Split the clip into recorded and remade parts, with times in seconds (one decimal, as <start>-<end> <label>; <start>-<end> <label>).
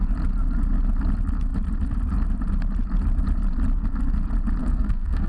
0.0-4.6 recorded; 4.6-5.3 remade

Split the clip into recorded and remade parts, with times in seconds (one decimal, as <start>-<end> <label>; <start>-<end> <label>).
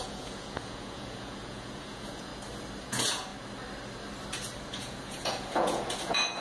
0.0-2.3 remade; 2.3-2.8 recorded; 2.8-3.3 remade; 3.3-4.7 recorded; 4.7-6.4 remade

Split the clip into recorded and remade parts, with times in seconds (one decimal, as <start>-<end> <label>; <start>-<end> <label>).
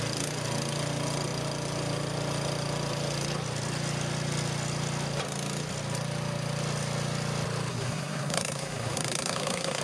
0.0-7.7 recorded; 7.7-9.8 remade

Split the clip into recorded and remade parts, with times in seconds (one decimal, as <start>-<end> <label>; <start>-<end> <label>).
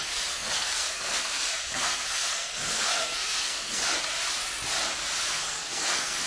0.0-3.8 remade; 3.8-5.2 recorded; 5.2-6.3 remade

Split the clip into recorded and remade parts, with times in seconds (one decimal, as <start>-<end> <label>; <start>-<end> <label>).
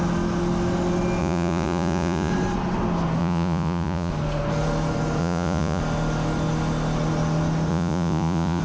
0.0-1.2 recorded; 1.2-2.3 remade; 2.3-3.2 recorded; 3.2-4.1 remade; 4.1-5.2 recorded; 5.2-5.8 remade; 5.8-7.7 recorded; 7.7-8.6 remade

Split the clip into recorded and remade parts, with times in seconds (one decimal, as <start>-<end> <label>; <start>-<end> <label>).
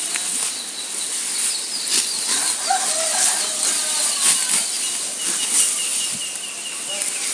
0.0-7.3 recorded